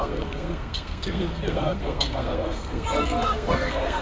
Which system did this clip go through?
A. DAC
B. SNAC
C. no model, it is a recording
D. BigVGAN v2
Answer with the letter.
B